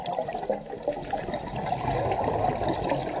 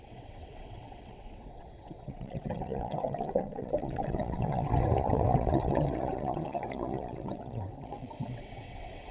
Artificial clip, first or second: second